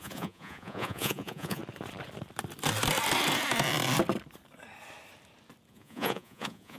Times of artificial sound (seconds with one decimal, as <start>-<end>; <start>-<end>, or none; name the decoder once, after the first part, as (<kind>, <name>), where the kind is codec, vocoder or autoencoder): 0.0-1.6 (vocoder, Vocos); 5.7-6.8